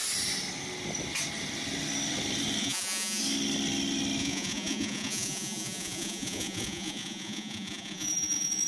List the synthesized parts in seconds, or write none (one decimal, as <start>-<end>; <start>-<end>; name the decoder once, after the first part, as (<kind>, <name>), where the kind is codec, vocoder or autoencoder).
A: 2.6-3.2 (vocoder, Vocos); 4.2-8.7